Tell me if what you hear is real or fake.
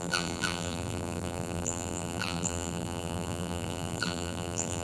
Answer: fake